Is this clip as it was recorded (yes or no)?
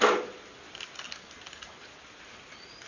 yes